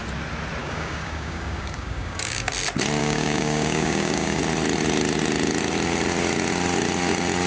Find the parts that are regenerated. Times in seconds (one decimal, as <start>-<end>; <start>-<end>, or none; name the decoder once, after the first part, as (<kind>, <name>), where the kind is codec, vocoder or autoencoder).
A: 0.6-2.5 (codec, DAC); 3.0-4.4